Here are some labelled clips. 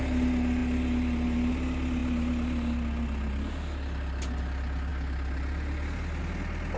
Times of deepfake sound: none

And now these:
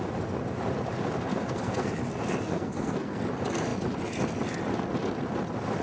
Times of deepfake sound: 1.3-1.9; 2.5-3.2

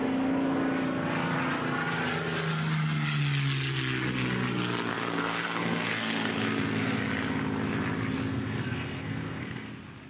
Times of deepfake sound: 4.9-7.0; 8.3-9.7

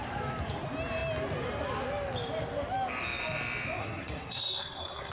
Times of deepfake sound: 3.8-5.1

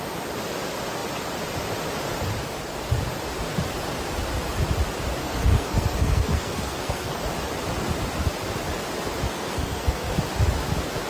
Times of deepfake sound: 5.2-7.2; 9.3-10.1

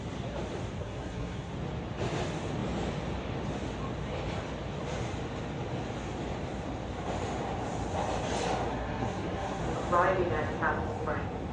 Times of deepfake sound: 0.8-1.5; 8.7-9.6

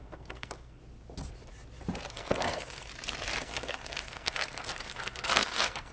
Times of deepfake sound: 0.0-0.8; 2.1-2.9; 3.4-5.9

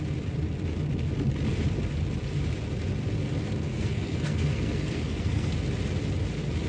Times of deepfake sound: 3.7-5.5